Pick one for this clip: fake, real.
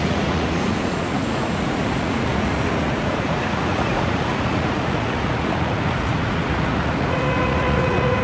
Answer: fake